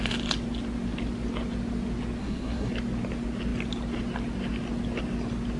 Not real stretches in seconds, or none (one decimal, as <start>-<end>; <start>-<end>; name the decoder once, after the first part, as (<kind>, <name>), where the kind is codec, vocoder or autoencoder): 2.2-2.7 (codec, SNAC)